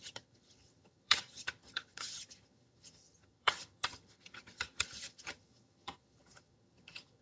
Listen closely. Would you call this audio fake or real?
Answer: fake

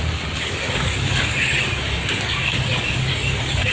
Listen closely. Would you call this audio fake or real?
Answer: fake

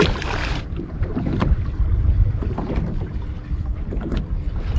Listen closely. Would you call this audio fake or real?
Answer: real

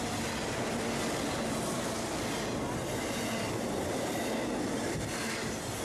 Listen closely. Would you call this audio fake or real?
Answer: real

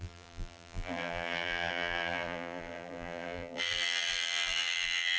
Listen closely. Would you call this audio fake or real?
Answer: fake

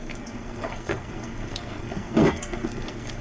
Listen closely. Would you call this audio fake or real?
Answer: fake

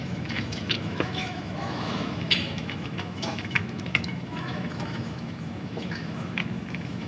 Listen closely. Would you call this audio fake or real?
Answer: fake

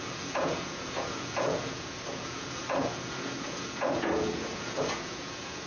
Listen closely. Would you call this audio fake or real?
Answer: fake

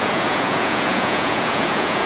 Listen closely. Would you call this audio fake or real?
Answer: fake